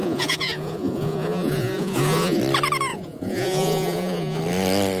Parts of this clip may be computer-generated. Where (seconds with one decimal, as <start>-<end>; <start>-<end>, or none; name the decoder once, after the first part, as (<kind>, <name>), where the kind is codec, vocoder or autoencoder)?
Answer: 0.0-2.4 (vocoder, Vocos); 2.9-4.4